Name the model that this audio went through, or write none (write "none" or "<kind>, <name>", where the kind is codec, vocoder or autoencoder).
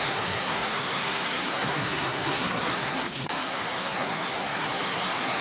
codec, SNAC